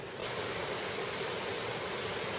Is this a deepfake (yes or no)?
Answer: no